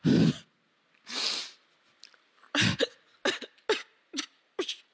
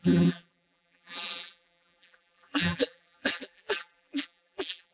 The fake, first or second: second